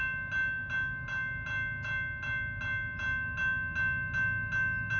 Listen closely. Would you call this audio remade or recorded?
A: recorded